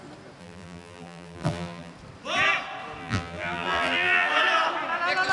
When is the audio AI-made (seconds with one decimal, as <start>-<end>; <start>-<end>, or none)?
0.4-1.9; 3.0-4.3